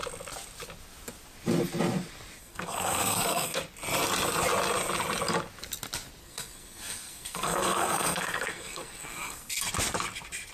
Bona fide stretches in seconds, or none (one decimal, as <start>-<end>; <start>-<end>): 0.0-2.4; 3.6-6.2; 9.7-10.5